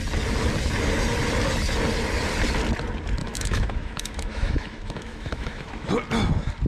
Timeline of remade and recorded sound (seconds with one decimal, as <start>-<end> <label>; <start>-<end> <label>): 0.0-3.2 recorded; 3.2-5.9 remade; 5.9-6.7 recorded